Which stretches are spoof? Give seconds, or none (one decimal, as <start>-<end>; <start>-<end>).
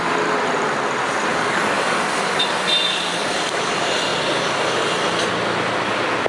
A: 1.3-2.4; 2.9-3.6